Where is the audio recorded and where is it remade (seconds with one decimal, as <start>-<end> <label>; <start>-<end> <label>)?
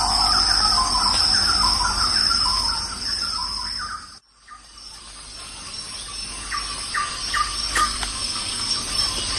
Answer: 0.0-7.8 recorded; 7.8-8.7 remade; 8.7-9.4 recorded